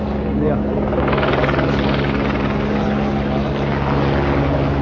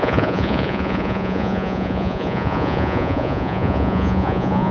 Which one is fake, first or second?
second